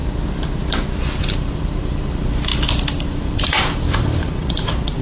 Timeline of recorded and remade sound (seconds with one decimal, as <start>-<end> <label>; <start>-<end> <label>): 0.0-1.2 recorded; 1.2-2.5 remade; 2.5-3.1 recorded; 3.1-5.0 remade